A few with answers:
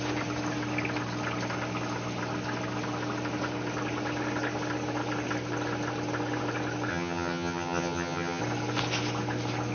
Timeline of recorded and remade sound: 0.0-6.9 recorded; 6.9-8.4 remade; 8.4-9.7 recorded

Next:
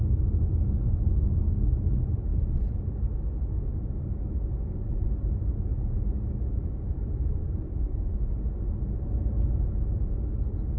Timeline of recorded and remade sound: 0.0-5.7 recorded; 5.7-7.9 remade; 7.9-10.8 recorded

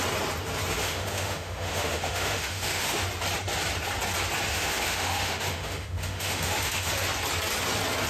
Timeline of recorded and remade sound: 0.0-0.8 recorded; 0.8-3.0 remade; 3.0-4.5 recorded; 4.5-6.9 remade; 6.9-8.1 recorded

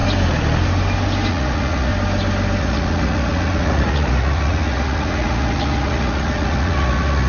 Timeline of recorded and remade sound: 0.0-1.3 recorded; 1.3-1.9 remade; 1.9-2.6 recorded; 2.6-7.3 remade

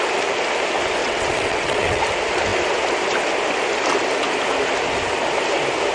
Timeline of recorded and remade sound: 0.0-1.0 recorded; 1.0-2.0 remade; 2.0-5.9 recorded

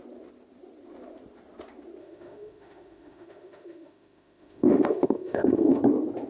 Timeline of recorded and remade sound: 0.0-2.0 recorded; 2.0-5.8 remade; 5.8-6.3 recorded

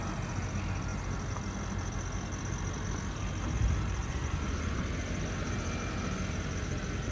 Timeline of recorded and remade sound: 0.0-4.0 recorded; 4.0-4.8 remade; 4.8-7.1 recorded